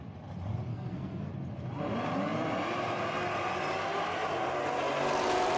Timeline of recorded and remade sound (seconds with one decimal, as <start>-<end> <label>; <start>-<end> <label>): 0.0-0.7 recorded; 0.7-1.3 remade; 1.3-5.6 recorded